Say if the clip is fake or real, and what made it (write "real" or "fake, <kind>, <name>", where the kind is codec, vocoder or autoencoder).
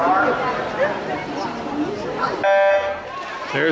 real